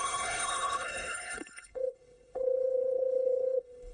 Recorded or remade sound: remade